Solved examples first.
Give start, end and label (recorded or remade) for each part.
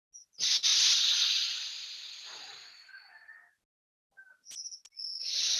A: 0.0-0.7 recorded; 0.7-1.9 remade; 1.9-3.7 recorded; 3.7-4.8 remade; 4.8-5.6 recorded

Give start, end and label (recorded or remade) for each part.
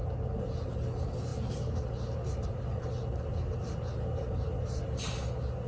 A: 0.0-5.7 recorded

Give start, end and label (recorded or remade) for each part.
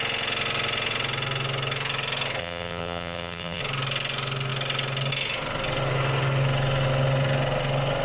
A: 0.0-2.4 recorded; 2.4-3.6 remade; 3.6-8.0 recorded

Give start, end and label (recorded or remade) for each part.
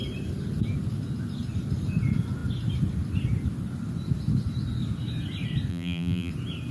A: 0.0-5.7 recorded; 5.7-6.3 remade; 6.3-6.7 recorded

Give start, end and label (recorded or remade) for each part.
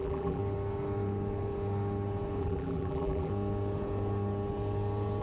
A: 0.0-0.4 remade; 0.4-2.4 recorded; 2.4-3.3 remade; 3.3-5.2 recorded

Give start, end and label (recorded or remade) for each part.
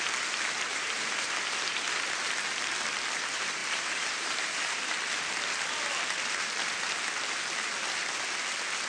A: 0.0-0.7 recorded; 0.7-1.3 remade; 1.3-3.6 recorded; 3.6-5.0 remade; 5.0-8.9 recorded